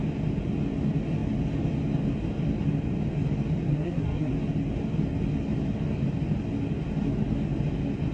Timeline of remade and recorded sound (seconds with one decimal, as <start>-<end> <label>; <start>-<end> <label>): 0.0-3.7 recorded; 3.7-4.3 remade; 4.3-8.1 recorded